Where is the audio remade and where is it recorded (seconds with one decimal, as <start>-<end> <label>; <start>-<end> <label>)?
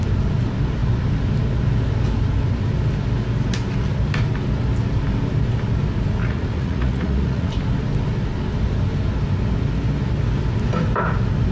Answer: 0.0-6.2 recorded; 6.2-7.5 remade; 7.5-11.5 recorded